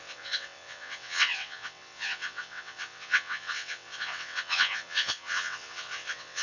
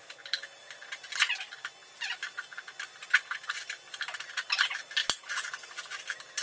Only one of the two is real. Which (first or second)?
second